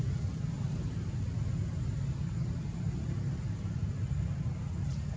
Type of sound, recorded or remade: recorded